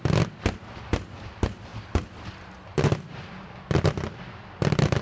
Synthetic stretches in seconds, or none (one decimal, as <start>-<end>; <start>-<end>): none